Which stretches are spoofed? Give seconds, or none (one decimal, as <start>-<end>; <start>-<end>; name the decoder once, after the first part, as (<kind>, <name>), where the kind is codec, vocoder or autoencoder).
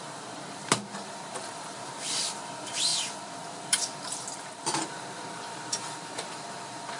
0.0-2.9 (vocoder, BigVGAN v2); 4.4-7.0